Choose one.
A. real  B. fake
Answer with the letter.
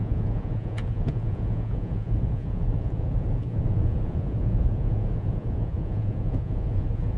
B